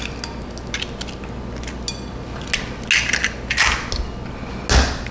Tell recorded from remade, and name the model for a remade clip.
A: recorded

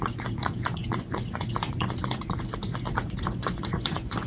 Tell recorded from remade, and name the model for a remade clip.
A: remade, vocoder, Vocos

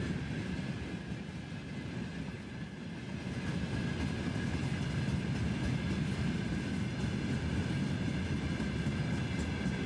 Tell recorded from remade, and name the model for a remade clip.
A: recorded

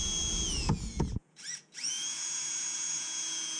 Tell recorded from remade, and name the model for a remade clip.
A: remade, vocoder, Vocos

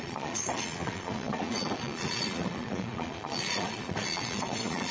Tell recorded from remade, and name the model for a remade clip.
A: remade, vocoder, Vocos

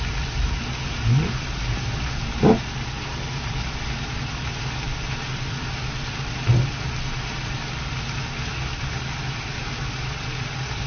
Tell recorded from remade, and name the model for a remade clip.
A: recorded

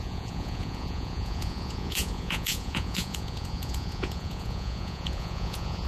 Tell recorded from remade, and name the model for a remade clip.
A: remade, vocoder, Vocos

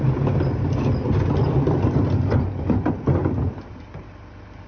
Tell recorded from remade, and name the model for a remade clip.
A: recorded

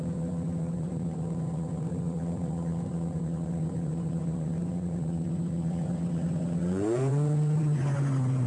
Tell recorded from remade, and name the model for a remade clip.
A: remade, vocoder, Vocos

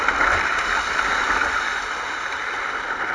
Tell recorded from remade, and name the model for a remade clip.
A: recorded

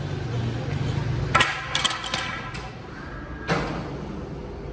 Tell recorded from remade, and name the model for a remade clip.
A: recorded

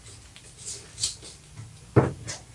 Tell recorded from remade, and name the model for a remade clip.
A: recorded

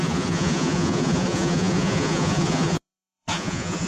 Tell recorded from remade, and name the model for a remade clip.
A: remade, vocoder, Vocos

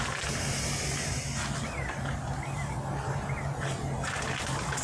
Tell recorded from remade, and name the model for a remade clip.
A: recorded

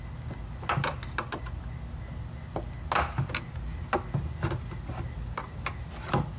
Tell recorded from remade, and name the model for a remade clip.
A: recorded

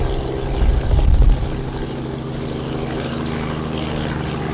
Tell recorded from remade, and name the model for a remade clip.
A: recorded